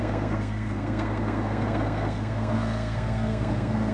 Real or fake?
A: fake